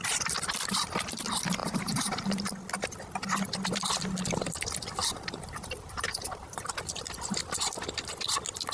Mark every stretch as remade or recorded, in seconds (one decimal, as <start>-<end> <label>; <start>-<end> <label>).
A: 0.0-1.6 recorded; 1.6-2.4 remade; 2.4-5.0 recorded; 5.0-6.8 remade; 6.8-8.7 recorded